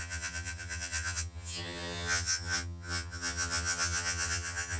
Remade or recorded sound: remade